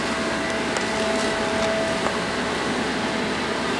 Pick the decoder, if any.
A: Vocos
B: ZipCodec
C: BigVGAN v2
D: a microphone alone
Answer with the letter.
D